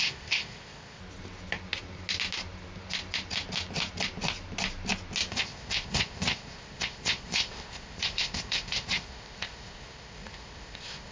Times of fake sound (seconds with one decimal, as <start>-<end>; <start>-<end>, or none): 0.0-1.0; 5.3-11.1